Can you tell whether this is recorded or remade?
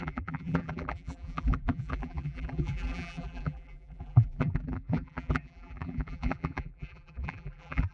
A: remade